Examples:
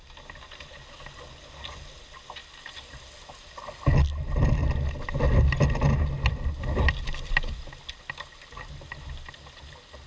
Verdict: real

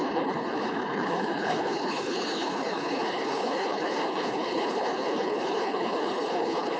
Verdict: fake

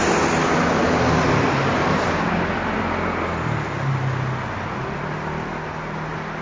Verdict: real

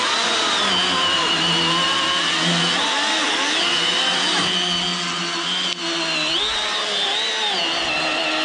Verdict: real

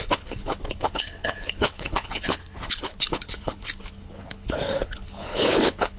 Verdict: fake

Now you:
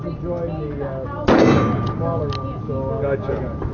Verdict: real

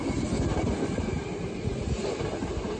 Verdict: real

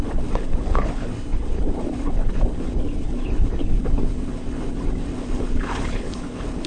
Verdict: fake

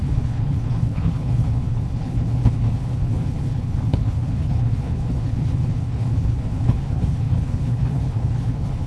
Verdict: fake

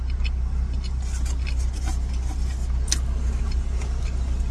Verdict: real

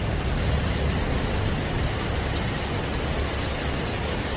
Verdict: real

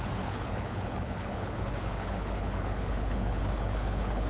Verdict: fake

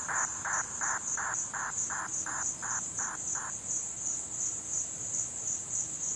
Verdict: real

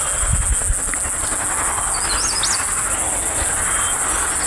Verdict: real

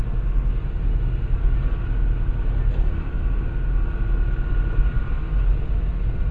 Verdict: real